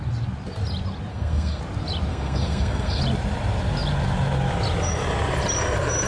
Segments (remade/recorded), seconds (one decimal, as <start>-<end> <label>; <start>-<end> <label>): 0.0-1.1 recorded; 1.1-1.6 remade; 1.6-2.1 recorded; 2.1-3.0 remade; 3.0-6.1 recorded